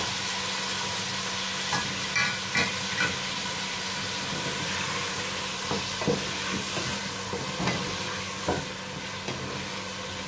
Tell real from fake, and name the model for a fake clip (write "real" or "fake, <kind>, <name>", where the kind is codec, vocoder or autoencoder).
real